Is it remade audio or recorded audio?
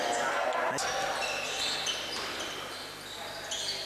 recorded